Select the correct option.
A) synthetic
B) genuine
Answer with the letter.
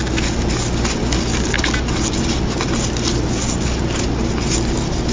B